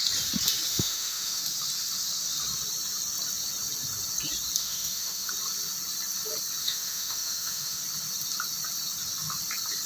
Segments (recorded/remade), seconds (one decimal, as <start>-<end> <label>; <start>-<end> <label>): 0.0-0.7 recorded; 0.7-1.4 remade; 1.4-4.6 recorded; 4.6-5.3 remade; 5.3-6.6 recorded; 6.6-7.8 remade; 7.8-9.9 recorded